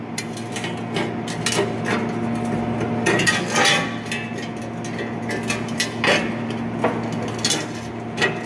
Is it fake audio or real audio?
real